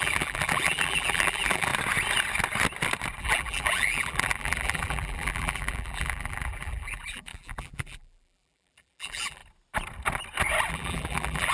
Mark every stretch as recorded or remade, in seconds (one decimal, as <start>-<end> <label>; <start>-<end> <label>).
0.0-1.7 remade; 1.7-3.2 recorded; 3.2-9.4 remade; 9.4-10.7 recorded; 10.7-11.5 remade